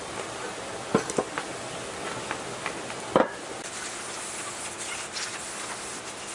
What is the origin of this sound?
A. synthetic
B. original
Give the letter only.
B